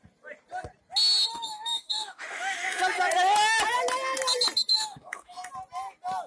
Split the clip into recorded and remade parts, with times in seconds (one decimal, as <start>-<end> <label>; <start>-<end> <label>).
0.0-1.3 recorded; 1.3-2.8 remade; 2.8-4.7 recorded; 4.7-5.5 remade; 5.5-6.3 recorded